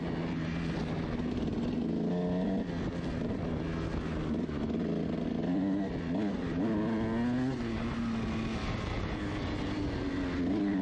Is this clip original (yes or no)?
yes